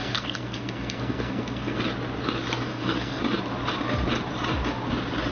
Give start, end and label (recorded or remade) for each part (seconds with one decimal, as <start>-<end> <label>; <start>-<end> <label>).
0.0-1.8 remade; 1.8-2.7 recorded; 2.7-3.2 remade; 3.2-5.3 recorded